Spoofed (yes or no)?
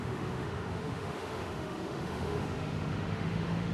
yes